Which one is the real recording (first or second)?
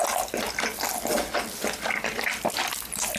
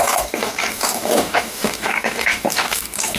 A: first